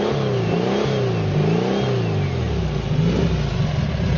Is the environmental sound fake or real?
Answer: real